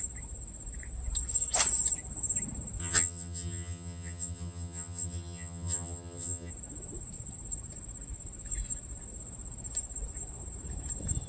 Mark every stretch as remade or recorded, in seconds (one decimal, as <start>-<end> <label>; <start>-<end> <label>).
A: 0.0-2.8 recorded; 2.8-6.5 remade; 6.5-11.3 recorded